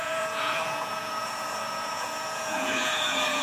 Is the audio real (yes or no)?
no